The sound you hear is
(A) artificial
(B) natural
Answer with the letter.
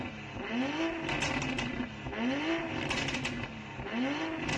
B